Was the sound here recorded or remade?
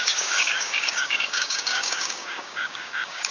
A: remade